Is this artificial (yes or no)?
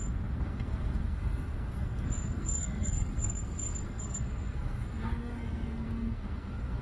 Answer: yes